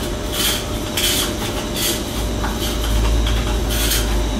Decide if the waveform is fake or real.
real